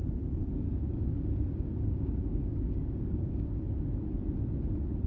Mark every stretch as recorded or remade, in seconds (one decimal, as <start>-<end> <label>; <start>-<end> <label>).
0.0-0.4 recorded; 0.4-3.5 remade; 3.5-5.1 recorded